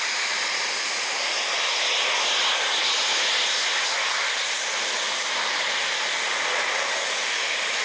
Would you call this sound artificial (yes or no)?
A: no